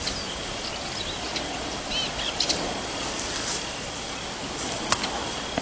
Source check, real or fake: real